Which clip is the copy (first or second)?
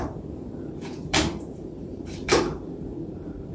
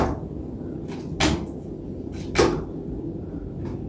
first